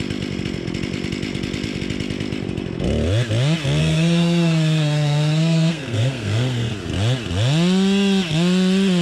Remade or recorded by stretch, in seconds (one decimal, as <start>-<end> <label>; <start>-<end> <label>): 0.0-3.8 recorded; 3.8-6.7 remade; 6.7-9.0 recorded